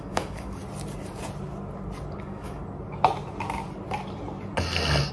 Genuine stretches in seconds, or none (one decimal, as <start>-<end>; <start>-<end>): 0.6-2.2; 2.6-5.1